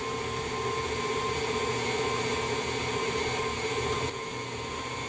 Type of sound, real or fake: real